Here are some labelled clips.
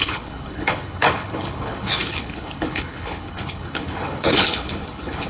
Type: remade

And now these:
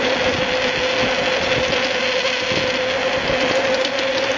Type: recorded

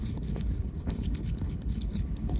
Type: remade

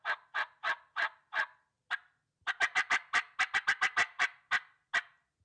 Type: recorded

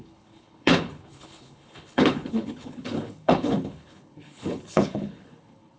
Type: remade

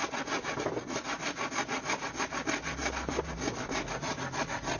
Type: recorded